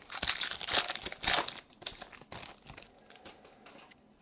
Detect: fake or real real